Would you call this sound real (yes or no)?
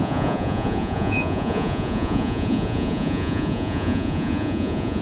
no